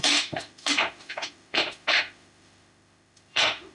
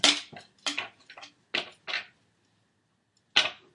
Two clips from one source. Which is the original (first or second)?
second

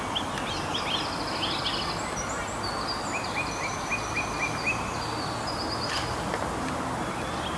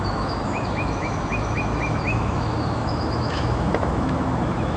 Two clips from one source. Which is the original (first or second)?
first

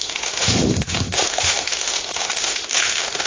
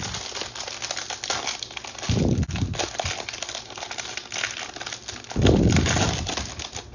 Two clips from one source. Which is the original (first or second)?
second